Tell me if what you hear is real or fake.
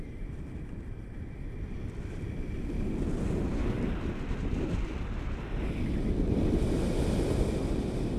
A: real